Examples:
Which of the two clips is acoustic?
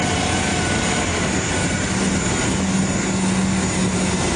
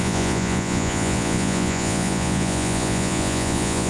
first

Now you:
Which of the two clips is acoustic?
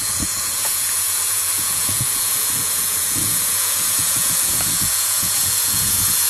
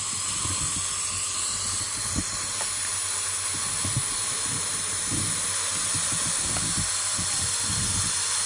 second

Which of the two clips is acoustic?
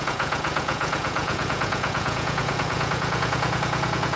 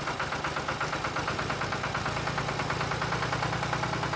second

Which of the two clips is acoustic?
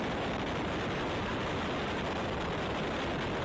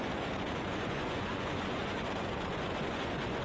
first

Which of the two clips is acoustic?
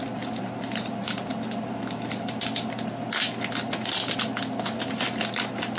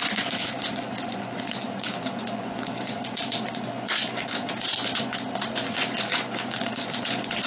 first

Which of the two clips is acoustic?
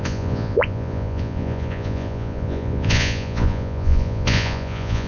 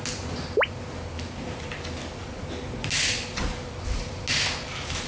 second